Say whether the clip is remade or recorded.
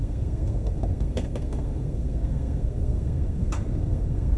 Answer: remade